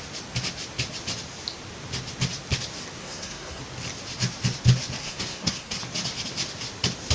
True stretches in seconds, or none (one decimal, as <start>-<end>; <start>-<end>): 0.0-3.0; 3.6-5.0; 5.8-7.1